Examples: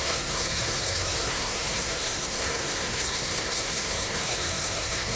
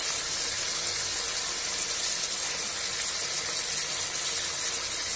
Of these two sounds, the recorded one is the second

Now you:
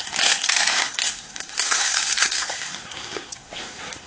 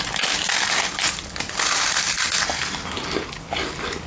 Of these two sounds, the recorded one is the second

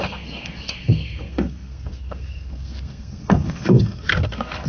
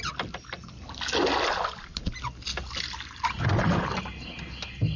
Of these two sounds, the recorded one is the second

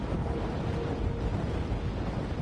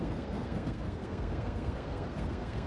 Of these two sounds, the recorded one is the first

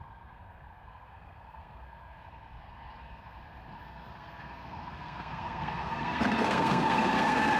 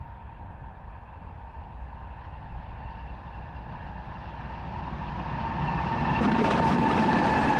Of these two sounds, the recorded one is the second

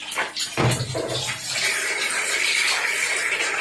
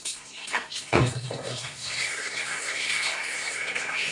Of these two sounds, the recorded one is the first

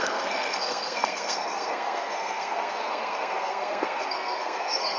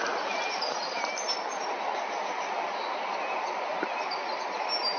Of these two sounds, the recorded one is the second